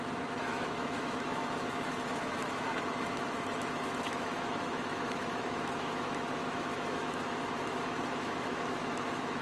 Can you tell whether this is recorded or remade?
remade